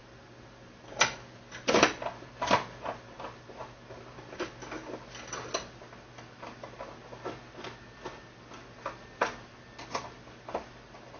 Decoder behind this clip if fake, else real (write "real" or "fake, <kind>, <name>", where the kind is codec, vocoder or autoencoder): real